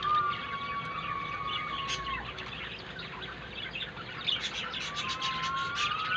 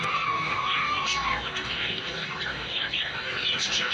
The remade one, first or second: second